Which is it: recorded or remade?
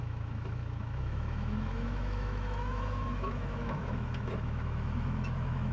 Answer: remade